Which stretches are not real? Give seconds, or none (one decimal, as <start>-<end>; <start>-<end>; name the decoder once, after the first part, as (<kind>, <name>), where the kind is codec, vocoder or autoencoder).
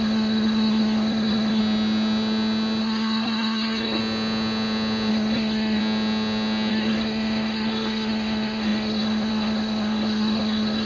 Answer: 0.0-1.6 (codec, SNAC); 2.8-4.0; 5.1-5.8; 6.7-10.9